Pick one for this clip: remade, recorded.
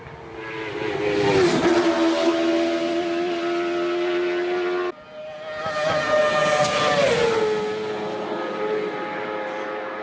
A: recorded